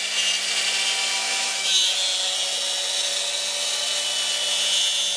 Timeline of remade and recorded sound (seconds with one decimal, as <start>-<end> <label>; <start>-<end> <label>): 0.0-1.2 recorded; 1.2-1.9 remade; 1.9-5.2 recorded